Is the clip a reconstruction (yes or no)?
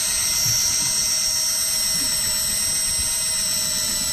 no